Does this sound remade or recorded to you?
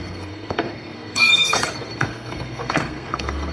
remade